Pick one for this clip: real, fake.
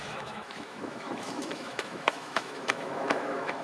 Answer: fake